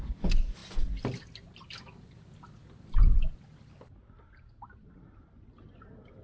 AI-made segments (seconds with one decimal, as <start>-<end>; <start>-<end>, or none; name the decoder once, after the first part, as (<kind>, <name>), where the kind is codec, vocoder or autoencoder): none